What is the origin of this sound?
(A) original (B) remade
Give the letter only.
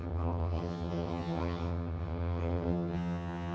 B